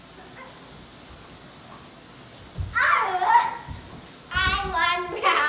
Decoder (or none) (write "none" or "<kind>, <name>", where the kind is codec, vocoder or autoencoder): none